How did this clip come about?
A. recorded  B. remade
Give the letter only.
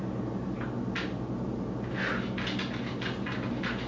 A